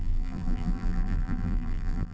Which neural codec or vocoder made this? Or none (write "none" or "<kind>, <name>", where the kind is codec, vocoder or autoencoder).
vocoder, BigVGAN v2